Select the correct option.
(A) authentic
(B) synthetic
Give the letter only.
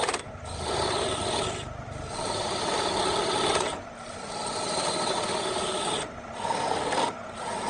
A